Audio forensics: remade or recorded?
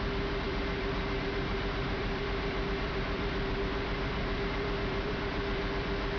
remade